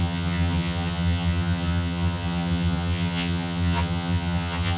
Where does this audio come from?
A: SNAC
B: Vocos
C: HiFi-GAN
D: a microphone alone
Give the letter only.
C